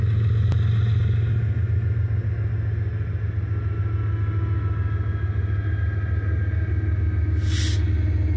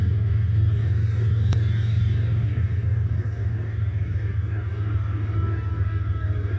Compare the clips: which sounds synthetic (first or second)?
second